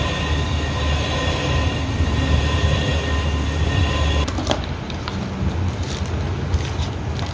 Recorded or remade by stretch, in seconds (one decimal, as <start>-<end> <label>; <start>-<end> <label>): 0.0-7.3 recorded